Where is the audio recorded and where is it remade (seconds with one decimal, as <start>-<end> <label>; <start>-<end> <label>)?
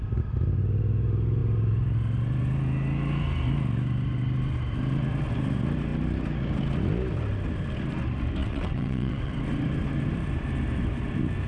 0.0-8.4 recorded; 8.4-9.3 remade; 9.3-11.5 recorded